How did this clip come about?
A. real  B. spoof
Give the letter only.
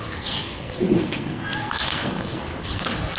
B